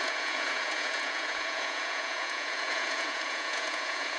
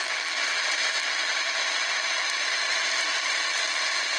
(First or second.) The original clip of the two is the second